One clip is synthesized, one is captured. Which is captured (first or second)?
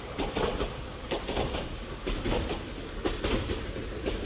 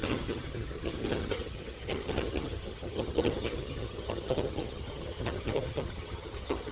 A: first